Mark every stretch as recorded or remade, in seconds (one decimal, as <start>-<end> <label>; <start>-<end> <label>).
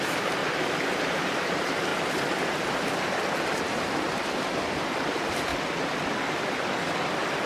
0.0-0.4 remade; 0.4-1.2 recorded; 1.2-1.9 remade; 1.9-4.8 recorded; 4.8-5.5 remade; 5.5-6.1 recorded; 6.1-7.5 remade